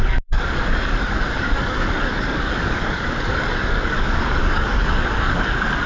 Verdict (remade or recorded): remade